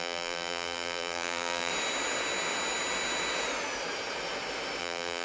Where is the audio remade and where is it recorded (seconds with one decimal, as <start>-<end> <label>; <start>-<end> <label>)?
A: 0.0-1.7 remade; 1.7-4.8 recorded; 4.8-5.2 remade